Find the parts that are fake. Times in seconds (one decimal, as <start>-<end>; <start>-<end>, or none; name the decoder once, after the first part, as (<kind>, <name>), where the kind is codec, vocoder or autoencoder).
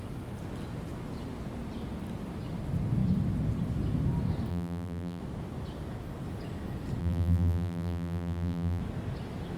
4.5-5.2 (vocoder, BigVGAN v2); 7.0-8.8